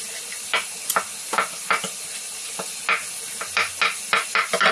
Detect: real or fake real